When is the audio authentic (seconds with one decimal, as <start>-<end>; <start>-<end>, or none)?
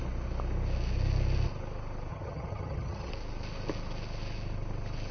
0.0-2.1; 3.1-5.1